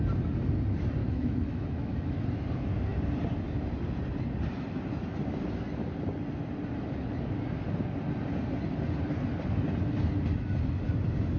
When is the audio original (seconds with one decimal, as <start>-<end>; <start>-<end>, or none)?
0.0-1.0; 2.2-11.4